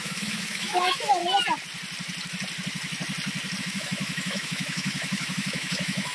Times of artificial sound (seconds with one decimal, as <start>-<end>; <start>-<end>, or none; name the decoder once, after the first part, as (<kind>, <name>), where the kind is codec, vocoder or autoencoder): 0.0-1.2 (autoencoder, DAC-VAE); 3.6-6.1